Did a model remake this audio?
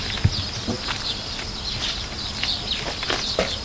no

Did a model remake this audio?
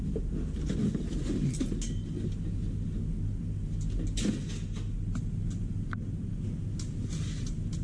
no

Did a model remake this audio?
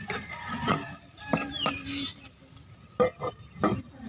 no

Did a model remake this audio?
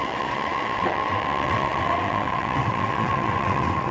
yes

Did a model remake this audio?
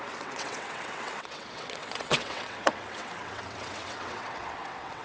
yes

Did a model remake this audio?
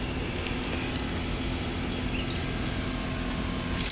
no